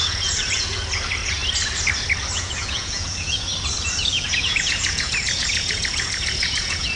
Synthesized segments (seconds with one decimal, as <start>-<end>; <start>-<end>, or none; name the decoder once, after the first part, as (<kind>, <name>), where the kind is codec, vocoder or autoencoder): 0.0-1.4 (vocoder, Vocos); 2.4-3.5; 4.0-7.0